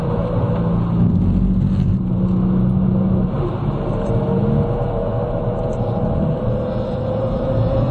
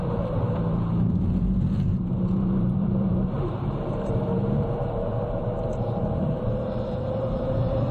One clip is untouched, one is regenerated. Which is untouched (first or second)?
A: first